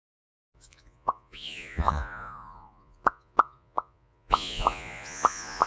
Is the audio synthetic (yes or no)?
yes